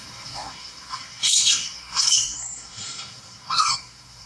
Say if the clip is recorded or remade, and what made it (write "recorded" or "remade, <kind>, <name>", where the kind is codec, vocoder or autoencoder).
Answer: remade, codec, SNAC